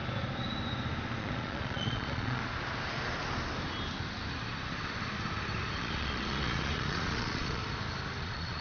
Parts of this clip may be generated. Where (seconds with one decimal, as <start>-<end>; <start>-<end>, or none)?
1.2-2.4; 5.8-7.6; 8.2-8.6